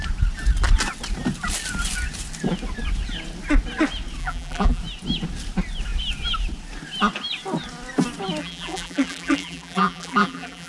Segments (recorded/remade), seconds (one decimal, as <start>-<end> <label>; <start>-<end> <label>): 0.0-4.2 recorded; 4.2-4.8 remade; 4.8-8.4 recorded; 8.4-10.7 remade